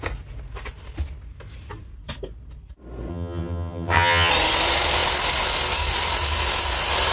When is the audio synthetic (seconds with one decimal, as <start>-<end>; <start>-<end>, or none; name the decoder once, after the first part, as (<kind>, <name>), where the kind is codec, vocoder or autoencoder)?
3.1-4.3 (vocoder, HiFi-GAN)